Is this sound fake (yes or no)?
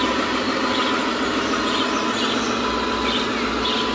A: no